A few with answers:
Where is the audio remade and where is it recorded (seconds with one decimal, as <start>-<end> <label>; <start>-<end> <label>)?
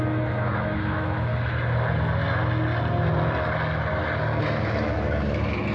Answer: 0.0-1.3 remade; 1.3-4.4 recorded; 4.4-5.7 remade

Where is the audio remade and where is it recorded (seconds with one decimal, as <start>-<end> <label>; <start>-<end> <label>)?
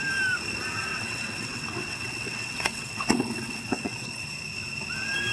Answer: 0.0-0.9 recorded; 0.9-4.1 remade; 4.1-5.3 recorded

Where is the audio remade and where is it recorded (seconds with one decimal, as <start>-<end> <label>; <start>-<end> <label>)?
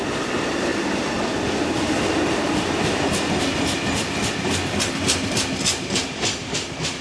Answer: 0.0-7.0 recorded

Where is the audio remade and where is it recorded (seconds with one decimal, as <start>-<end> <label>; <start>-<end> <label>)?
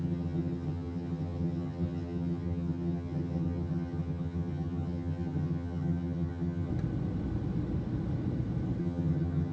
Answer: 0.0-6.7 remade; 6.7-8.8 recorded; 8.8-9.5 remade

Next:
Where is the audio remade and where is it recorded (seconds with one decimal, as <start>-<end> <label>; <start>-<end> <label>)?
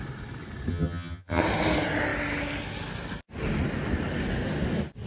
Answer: 0.0-0.7 recorded; 0.7-1.4 remade; 1.4-5.1 recorded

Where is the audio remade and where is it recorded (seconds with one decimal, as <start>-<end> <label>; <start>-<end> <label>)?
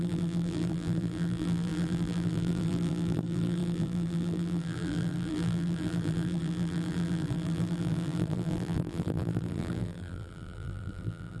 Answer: 0.0-11.4 remade